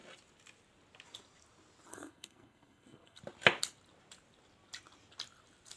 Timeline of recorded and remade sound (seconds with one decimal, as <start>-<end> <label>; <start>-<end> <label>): 0.0-1.9 recorded; 1.9-3.2 remade; 3.2-5.8 recorded